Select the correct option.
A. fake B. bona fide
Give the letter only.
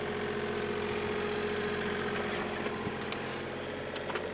B